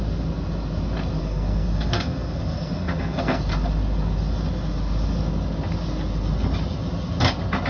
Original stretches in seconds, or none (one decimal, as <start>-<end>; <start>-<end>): 0.0-1.2; 3.4-7.7